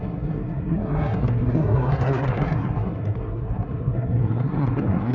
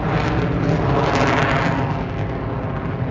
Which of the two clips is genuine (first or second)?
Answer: second